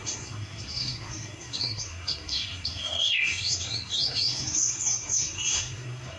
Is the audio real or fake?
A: fake